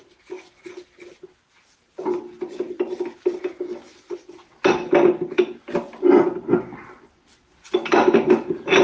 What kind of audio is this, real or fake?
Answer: real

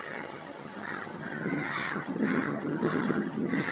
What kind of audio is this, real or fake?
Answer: fake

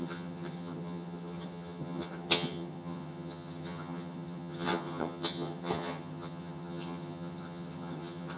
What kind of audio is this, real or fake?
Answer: fake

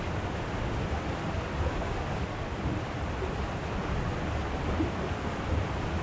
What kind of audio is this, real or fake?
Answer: real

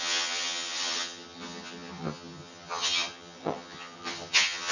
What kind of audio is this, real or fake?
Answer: fake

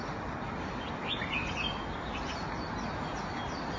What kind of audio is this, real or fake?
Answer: real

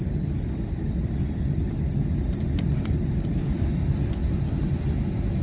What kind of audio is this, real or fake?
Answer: real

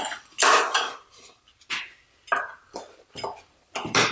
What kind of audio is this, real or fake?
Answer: real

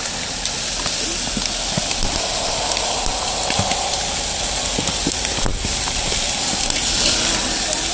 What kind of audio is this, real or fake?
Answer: real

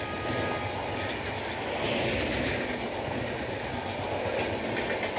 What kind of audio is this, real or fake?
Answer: real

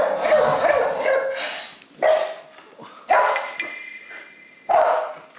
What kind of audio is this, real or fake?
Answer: real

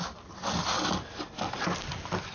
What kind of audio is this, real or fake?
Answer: real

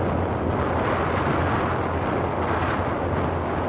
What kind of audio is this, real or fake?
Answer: real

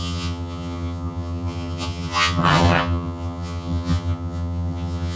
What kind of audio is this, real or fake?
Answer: fake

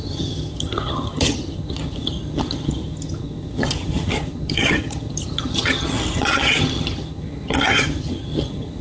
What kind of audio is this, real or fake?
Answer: fake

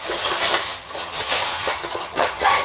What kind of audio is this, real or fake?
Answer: fake